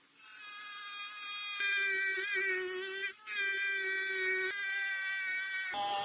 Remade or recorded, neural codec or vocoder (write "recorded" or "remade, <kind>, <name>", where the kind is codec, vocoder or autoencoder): recorded